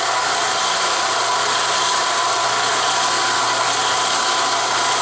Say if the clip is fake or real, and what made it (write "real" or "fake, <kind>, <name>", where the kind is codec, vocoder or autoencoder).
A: real